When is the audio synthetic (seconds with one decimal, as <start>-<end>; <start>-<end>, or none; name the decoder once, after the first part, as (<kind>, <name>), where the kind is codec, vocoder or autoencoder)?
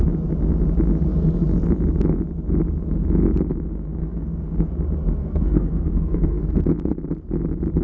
4.0-4.7 (codec, SNAC); 5.2-6.6